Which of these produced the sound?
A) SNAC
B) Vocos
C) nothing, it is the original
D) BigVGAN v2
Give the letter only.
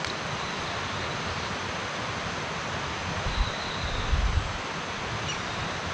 C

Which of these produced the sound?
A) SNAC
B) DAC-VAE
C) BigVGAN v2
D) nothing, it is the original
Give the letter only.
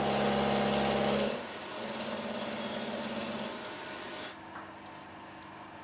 D